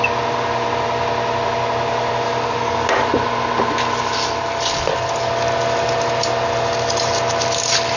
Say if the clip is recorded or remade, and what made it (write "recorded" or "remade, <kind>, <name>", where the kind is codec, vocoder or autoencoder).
recorded